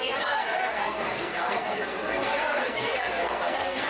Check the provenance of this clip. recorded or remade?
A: remade